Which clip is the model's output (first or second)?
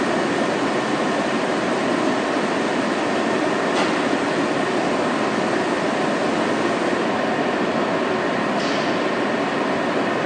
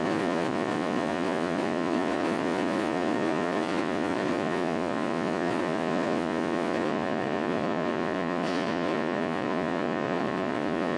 second